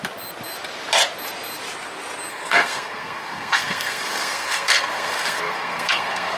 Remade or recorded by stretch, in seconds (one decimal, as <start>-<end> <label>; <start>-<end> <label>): 0.0-2.3 recorded; 2.3-6.4 remade